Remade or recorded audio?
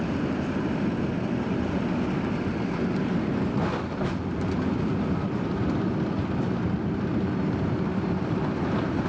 recorded